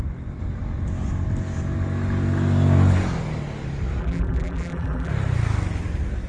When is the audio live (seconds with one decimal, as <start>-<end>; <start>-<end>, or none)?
0.0-4.0; 5.1-6.3